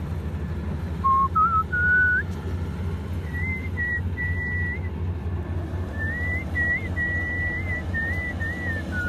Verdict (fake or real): real